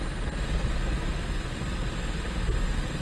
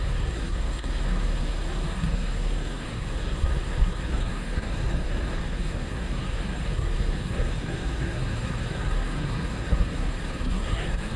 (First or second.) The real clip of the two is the first